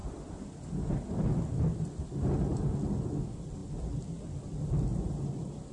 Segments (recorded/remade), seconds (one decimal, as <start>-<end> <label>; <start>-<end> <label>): 0.0-1.1 remade; 1.1-5.7 recorded